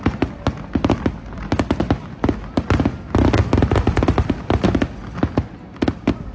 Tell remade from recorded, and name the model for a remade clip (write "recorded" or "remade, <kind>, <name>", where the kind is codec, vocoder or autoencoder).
recorded